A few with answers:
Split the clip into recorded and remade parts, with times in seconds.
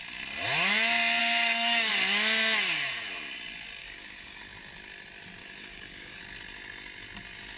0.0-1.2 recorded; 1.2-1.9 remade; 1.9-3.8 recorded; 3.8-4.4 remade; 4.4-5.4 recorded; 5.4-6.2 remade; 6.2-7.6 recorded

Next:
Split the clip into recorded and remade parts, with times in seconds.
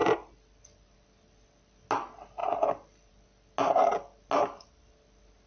0.0-5.5 recorded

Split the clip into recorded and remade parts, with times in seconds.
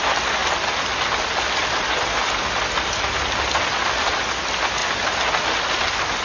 0.0-6.2 recorded